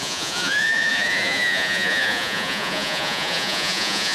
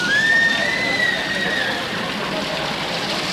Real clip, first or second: second